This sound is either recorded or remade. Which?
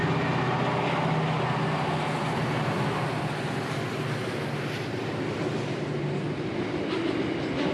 recorded